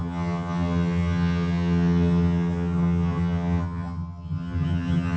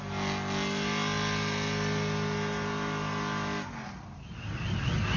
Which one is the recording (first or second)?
second